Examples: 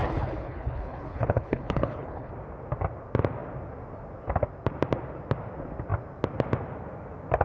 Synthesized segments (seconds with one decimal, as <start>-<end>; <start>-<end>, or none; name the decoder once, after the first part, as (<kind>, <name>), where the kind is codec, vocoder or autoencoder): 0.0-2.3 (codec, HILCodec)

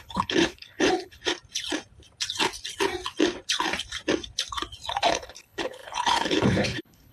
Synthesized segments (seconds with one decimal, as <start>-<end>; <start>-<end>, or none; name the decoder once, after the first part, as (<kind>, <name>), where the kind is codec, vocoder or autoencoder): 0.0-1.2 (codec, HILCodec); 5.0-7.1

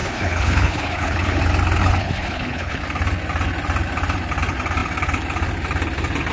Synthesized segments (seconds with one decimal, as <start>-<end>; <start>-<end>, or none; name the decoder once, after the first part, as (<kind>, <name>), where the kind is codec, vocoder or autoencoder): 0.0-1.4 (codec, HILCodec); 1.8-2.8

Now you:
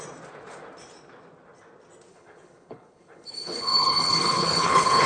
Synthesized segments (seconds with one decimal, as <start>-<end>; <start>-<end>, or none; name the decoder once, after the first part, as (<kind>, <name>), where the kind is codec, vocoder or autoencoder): 2.1-5.1 (codec, HILCodec)